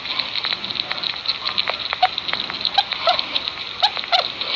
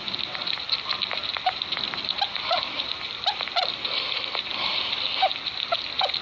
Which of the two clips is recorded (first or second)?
first